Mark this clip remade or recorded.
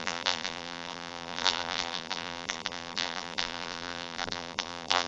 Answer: remade